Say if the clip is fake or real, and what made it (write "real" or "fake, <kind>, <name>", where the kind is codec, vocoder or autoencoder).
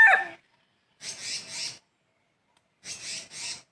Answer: real